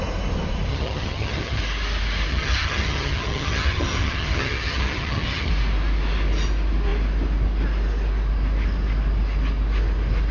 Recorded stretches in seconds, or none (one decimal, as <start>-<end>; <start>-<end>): 0.0-0.7; 1.6-2.3; 5.5-10.3